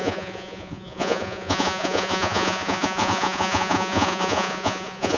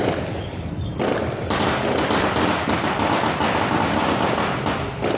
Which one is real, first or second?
second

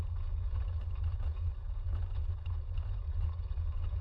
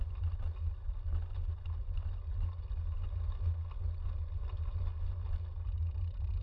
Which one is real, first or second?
second